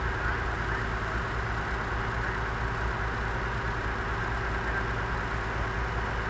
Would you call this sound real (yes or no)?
yes